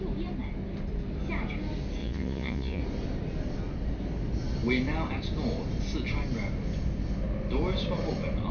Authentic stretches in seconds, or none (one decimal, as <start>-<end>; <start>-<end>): 0.0-2.0; 2.8-8.5